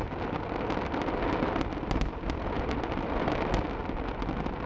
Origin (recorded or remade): recorded